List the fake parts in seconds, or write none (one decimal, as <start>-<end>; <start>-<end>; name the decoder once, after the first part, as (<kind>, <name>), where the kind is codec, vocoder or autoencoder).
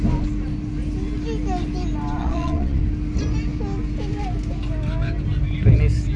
2.2-2.8 (vocoder, Vocos)